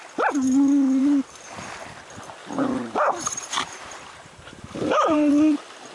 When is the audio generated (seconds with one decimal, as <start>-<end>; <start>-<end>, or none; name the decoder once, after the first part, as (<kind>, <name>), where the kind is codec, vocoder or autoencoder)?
2.4-5.3 (vocoder, BigVGAN v2)